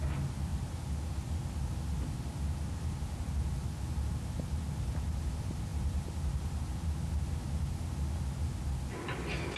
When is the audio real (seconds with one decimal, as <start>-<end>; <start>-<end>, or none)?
0.0-9.6